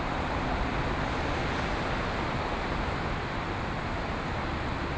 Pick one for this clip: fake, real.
real